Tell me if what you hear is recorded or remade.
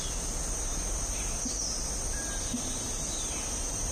recorded